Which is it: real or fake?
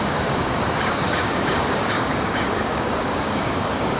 fake